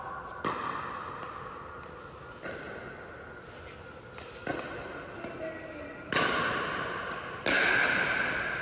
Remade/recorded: recorded